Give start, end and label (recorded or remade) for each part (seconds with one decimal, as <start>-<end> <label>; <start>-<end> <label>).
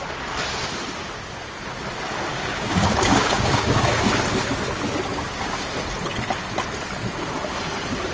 0.0-2.3 recorded; 2.3-4.2 remade; 4.2-5.1 recorded; 5.1-5.6 remade; 5.6-8.1 recorded